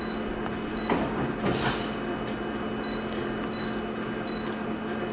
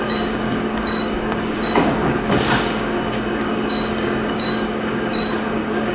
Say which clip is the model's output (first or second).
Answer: second